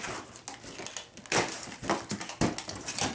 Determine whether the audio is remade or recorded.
recorded